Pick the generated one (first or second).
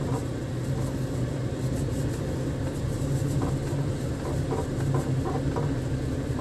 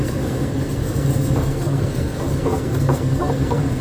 second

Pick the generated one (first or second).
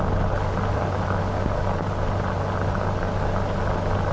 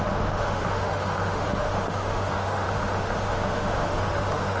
second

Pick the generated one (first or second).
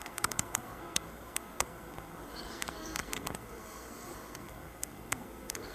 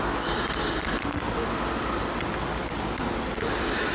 first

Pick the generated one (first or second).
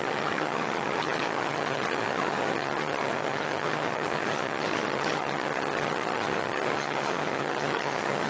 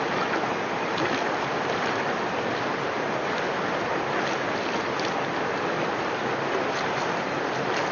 first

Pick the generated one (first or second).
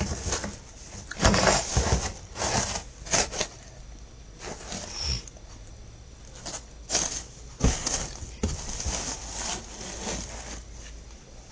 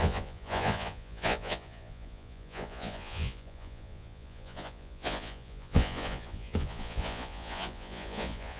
second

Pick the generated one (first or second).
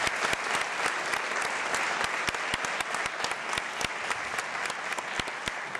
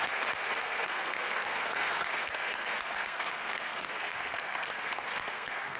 second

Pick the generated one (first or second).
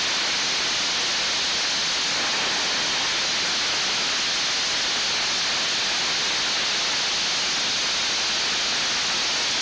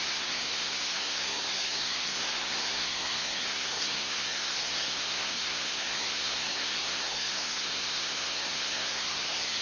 second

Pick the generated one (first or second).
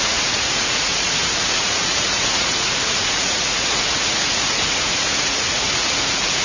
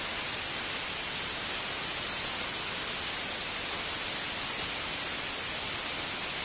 first